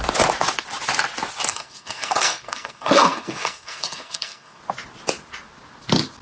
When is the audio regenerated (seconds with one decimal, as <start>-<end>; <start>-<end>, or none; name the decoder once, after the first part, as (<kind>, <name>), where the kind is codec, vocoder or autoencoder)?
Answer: 1.5-4.6 (codec, SNAC)